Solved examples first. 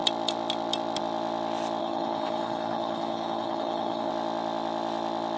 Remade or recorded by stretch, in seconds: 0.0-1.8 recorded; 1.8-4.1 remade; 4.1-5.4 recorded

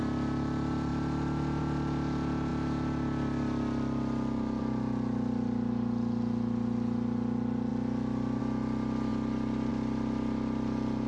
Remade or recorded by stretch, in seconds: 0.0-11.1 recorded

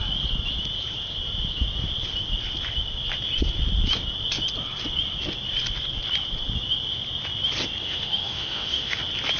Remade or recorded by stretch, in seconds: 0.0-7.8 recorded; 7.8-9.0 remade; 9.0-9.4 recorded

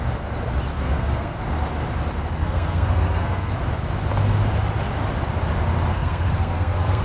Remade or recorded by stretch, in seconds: 0.0-0.7 recorded; 0.7-1.4 remade; 1.4-2.4 recorded; 2.4-3.5 remade; 3.5-5.9 recorded; 5.9-7.0 remade

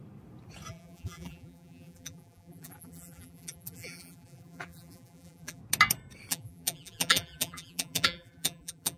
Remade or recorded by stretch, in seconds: 0.0-0.7 recorded; 0.7-5.6 remade; 5.6-6.3 recorded; 6.3-9.0 remade

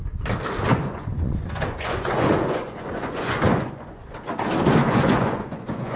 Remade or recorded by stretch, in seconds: 0.0-0.7 recorded; 0.7-4.3 remade; 4.3-4.8 recorded; 4.8-6.0 remade